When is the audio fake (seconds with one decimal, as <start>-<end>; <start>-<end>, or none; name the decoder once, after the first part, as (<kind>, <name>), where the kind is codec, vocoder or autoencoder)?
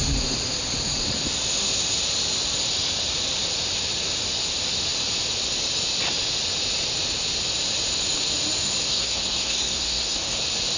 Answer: 8.9-10.4 (codec, SNAC)